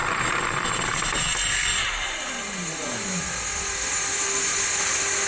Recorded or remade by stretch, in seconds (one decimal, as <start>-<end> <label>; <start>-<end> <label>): 0.0-5.3 recorded